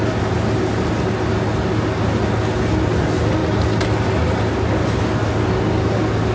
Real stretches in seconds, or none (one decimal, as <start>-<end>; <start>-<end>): 0.0-6.3